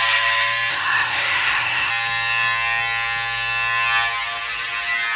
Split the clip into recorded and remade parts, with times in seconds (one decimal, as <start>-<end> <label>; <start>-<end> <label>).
0.0-0.7 recorded; 0.7-1.9 remade; 1.9-5.2 recorded